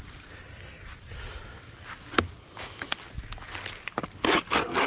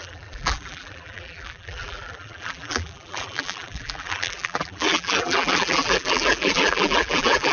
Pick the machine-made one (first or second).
second